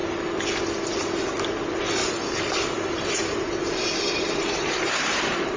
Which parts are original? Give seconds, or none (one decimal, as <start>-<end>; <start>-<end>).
0.5-2.0